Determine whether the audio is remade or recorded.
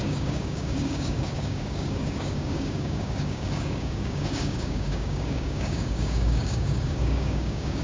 remade